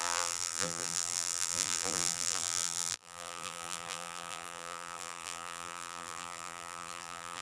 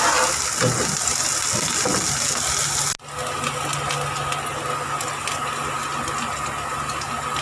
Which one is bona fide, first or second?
second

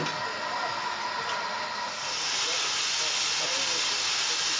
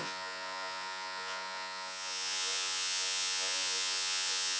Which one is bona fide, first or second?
first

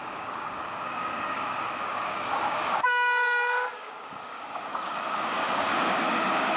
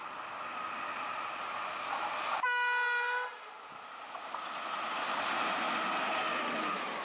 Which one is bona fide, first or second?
second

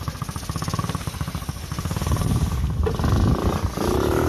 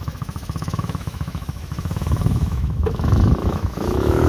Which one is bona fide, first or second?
first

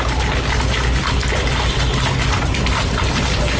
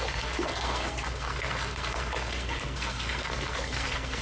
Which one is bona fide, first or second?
first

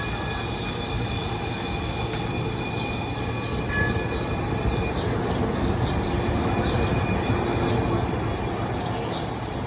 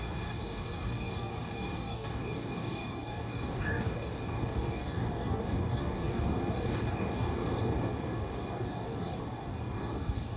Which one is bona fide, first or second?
first